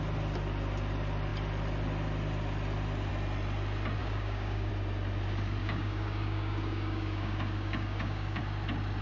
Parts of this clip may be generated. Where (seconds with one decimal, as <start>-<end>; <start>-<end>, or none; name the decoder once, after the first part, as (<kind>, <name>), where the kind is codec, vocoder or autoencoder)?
4.0-4.7 (codec, DAC); 5.6-8.4